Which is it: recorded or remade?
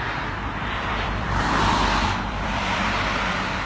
remade